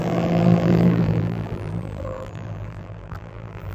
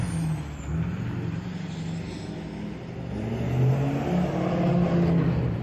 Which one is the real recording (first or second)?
second